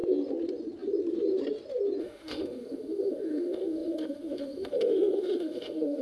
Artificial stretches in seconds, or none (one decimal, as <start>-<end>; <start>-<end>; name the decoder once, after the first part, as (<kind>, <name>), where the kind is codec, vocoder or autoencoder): 2.0-6.0 (autoencoder, DAC-VAE)